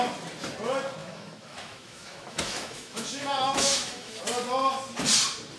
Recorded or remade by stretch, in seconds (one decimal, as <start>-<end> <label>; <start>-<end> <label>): 0.0-1.0 recorded; 1.0-4.2 remade; 4.2-5.6 recorded